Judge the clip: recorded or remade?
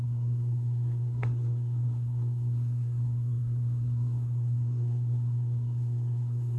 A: remade